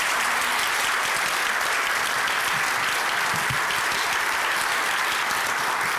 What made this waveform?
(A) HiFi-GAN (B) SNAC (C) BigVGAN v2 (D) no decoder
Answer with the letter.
D